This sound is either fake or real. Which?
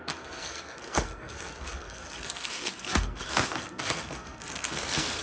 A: fake